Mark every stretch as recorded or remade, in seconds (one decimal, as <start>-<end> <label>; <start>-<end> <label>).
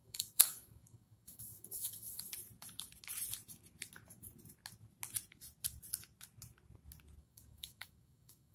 0.0-2.3 remade; 2.3-7.2 recorded; 7.2-8.5 remade